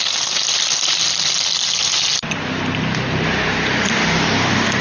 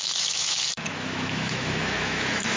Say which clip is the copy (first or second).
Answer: second